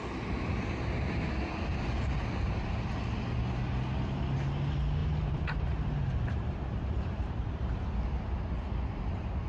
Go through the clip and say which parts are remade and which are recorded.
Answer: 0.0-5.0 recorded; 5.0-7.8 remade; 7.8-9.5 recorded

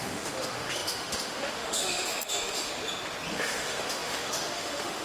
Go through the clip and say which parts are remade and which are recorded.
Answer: 0.0-2.7 remade; 2.7-3.3 recorded; 3.3-5.0 remade